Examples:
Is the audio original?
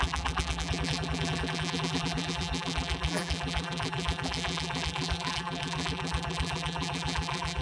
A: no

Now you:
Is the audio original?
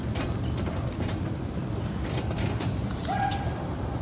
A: no